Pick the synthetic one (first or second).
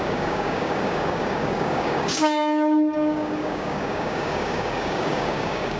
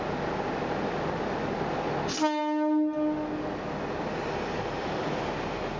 first